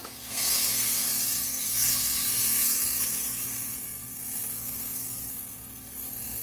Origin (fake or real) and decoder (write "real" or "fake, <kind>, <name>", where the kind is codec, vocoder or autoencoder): fake, codec, SNAC